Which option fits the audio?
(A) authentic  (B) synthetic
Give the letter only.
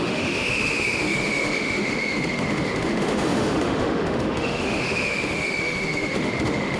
B